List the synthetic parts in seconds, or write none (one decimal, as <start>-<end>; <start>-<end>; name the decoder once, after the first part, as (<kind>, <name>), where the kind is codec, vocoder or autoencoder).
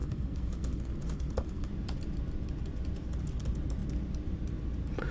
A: 0.0-1.7 (codec, SNAC)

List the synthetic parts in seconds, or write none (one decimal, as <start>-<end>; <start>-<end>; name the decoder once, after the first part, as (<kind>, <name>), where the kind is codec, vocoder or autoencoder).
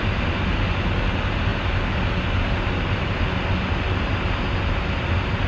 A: none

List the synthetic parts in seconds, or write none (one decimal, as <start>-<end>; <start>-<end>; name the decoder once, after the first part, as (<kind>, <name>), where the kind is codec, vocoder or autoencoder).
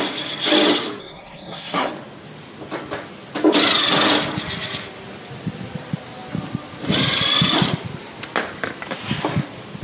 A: 1.0-1.9 (codec, SNAC)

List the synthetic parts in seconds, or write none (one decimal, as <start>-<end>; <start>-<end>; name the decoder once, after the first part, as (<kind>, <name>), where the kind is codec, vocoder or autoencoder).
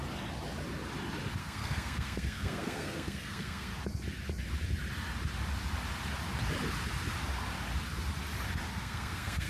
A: 1.4-3.7 (codec, SNAC); 8.8-9.5